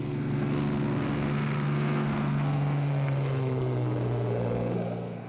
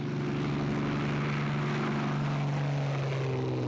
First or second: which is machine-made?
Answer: first